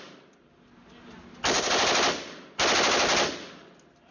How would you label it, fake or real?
real